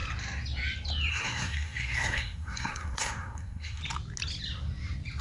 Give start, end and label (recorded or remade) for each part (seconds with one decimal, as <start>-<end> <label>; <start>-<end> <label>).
0.0-1.1 recorded; 1.1-3.8 remade; 3.8-5.2 recorded